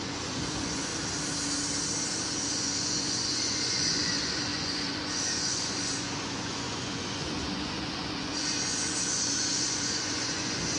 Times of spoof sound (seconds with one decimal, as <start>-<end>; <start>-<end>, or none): 0.0-0.9; 2.5-10.8